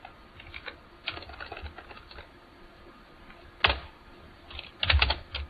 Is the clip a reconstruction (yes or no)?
no